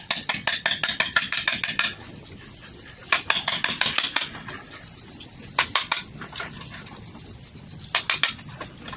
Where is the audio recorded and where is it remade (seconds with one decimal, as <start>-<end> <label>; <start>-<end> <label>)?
0.0-9.0 recorded